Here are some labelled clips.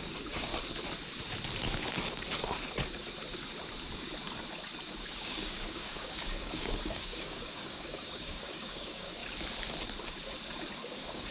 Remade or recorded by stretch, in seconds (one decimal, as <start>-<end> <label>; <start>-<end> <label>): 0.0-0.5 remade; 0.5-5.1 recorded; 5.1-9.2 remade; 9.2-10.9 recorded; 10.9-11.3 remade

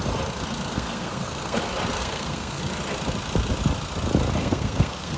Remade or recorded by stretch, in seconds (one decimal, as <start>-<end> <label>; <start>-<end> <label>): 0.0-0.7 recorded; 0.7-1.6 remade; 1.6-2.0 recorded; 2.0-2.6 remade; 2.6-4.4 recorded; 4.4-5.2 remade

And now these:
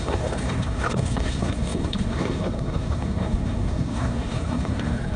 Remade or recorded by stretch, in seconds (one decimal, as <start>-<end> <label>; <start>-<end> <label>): 0.0-5.2 remade

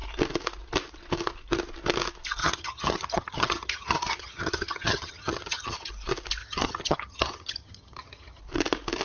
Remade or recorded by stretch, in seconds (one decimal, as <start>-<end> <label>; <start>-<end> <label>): 0.0-2.4 recorded; 2.4-5.9 remade; 5.9-6.4 recorded; 6.4-8.4 remade; 8.4-9.0 recorded